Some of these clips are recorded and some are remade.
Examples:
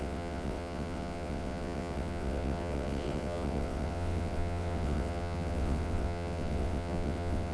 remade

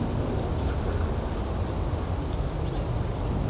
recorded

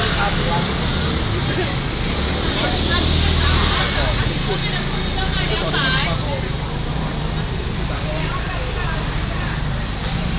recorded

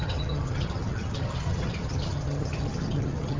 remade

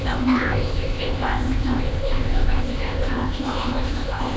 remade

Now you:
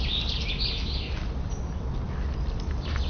recorded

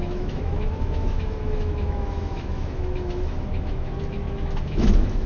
remade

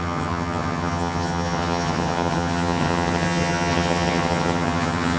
remade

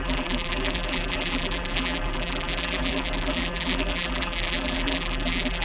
remade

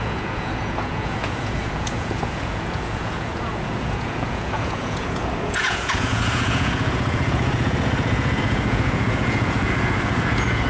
remade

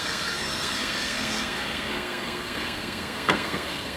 remade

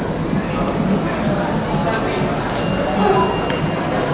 recorded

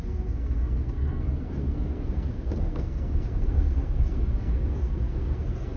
remade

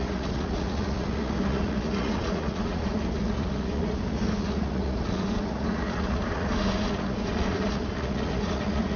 remade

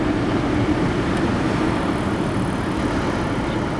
recorded